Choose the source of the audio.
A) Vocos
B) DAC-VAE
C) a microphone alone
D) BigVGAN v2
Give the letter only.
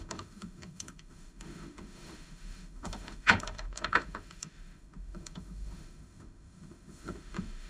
B